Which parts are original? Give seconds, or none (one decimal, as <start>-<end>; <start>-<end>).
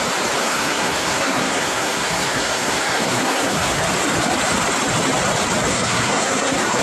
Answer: 0.0-0.4; 3.8-5.7